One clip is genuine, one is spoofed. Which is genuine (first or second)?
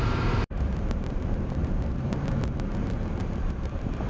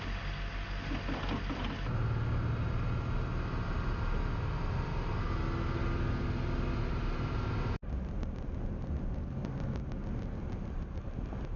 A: second